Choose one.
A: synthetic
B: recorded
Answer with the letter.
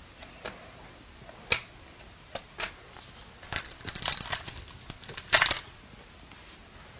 B